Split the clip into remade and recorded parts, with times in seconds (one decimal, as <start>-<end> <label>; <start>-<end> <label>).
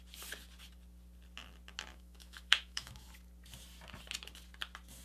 0.0-1.9 recorded; 1.9-3.1 remade; 3.1-5.0 recorded